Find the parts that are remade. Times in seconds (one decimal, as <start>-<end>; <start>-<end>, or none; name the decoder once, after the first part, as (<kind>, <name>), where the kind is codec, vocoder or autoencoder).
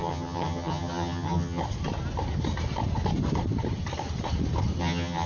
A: 0.0-1.6 (vocoder, HiFi-GAN); 4.8-5.3